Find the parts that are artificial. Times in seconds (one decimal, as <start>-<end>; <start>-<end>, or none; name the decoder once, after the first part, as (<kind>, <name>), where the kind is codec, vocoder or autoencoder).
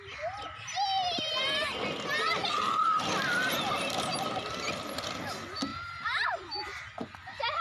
5.7-6.8 (vocoder, BigVGAN v2)